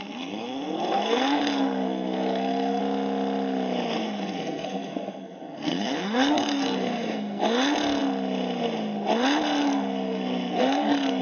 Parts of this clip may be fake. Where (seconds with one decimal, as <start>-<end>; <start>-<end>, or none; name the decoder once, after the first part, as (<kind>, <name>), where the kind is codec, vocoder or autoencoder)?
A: 0.0-2.8 (codec, SNAC); 4.0-7.4; 9.6-11.2